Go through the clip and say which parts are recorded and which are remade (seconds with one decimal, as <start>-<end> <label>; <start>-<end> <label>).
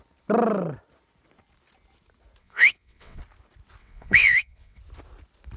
0.0-2.4 recorded; 2.4-3.2 remade; 3.2-3.8 recorded; 3.8-4.8 remade; 4.8-5.6 recorded